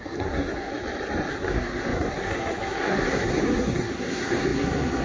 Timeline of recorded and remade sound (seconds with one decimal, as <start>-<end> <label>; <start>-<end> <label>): 0.0-0.7 remade; 0.7-1.3 recorded; 1.3-5.0 remade